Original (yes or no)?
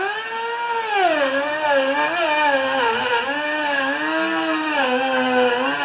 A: yes